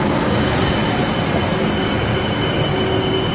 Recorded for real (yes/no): yes